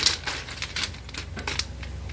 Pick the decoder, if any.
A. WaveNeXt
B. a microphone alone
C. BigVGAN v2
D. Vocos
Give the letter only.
B